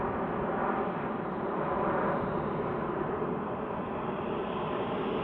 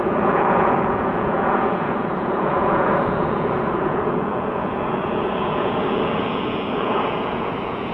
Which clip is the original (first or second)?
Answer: first